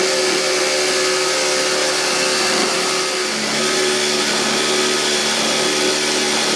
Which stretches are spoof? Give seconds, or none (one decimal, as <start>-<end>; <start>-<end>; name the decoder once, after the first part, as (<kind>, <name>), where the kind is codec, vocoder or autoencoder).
none